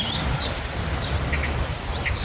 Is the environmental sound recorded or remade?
recorded